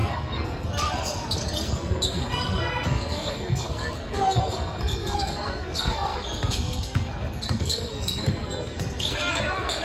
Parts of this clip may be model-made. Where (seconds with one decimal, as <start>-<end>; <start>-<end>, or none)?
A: 0.0-9.8